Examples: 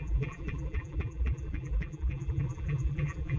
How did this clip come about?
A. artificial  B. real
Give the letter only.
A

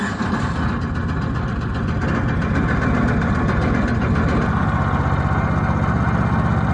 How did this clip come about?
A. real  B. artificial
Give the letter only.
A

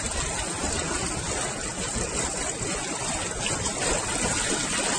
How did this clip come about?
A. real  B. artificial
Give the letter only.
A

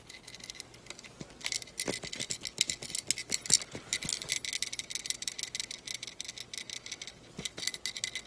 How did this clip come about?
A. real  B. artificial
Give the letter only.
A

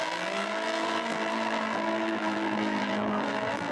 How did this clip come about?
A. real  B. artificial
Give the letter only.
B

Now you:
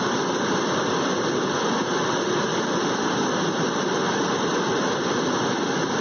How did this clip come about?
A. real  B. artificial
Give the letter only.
B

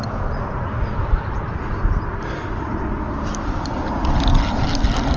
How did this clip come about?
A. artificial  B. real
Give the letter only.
B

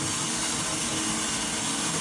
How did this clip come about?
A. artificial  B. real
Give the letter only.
B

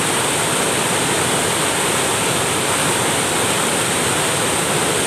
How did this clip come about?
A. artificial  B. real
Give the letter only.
B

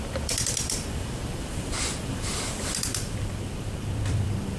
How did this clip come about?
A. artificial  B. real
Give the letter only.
A